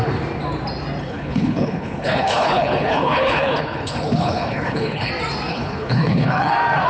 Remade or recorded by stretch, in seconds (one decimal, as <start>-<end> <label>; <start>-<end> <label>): 0.0-1.0 recorded; 1.0-5.1 remade; 5.1-5.5 recorded; 5.5-6.5 remade; 6.5-6.9 recorded